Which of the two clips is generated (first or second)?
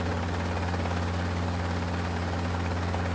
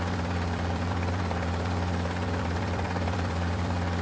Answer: second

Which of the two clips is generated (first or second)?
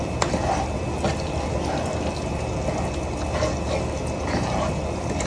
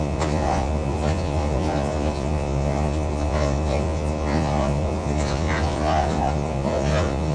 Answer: second